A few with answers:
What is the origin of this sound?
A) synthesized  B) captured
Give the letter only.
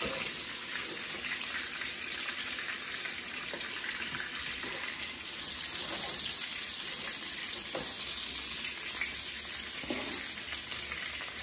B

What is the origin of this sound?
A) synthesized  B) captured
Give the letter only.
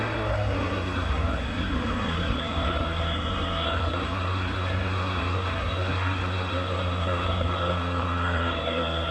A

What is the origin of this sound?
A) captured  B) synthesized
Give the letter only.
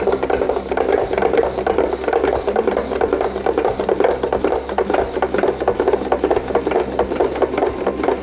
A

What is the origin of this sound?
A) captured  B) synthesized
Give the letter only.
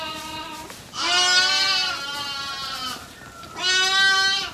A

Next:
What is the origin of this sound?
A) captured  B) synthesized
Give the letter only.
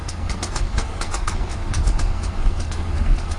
B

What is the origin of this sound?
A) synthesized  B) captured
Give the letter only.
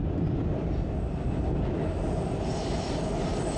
B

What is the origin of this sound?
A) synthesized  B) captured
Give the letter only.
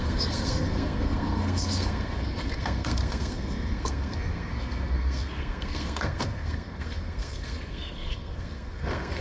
A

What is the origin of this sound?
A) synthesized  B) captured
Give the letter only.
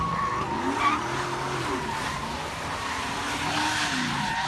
B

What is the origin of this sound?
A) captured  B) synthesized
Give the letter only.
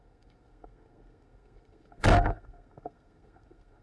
B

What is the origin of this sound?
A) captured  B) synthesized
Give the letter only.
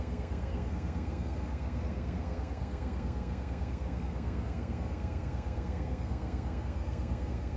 B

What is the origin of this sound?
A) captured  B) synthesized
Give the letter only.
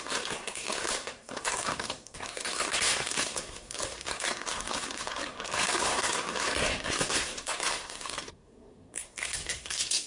B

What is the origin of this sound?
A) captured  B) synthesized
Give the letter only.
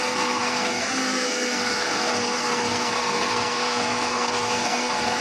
B